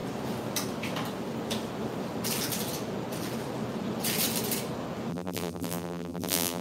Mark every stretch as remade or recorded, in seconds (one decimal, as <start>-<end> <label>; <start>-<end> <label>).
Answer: 0.0-5.1 recorded; 5.1-6.6 remade